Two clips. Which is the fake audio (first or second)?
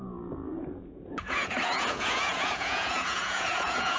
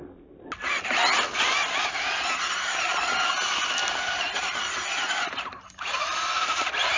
first